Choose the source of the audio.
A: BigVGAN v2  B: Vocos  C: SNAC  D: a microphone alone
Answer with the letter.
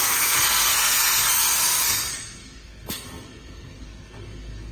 C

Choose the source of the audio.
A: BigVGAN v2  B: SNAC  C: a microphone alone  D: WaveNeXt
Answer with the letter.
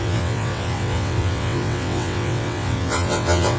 D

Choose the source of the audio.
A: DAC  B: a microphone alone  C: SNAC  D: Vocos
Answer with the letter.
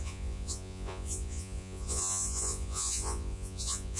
D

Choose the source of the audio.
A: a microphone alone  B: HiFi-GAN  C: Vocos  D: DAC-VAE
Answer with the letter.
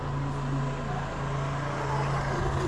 A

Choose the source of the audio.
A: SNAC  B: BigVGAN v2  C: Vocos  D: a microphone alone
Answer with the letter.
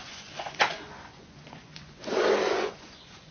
C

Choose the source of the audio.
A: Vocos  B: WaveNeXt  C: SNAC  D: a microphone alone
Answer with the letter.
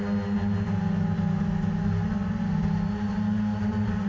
D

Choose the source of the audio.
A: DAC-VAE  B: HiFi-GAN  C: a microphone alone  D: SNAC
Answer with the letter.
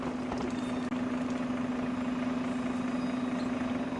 C